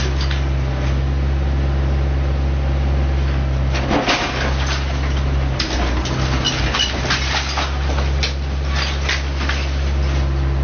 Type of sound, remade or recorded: recorded